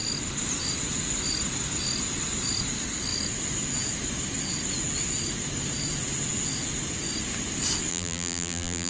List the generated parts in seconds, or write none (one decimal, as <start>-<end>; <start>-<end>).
7.9-8.9